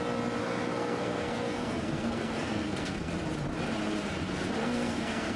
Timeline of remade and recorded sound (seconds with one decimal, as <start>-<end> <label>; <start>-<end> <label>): 0.0-0.4 recorded; 0.4-3.1 remade; 3.1-4.6 recorded; 4.6-5.4 remade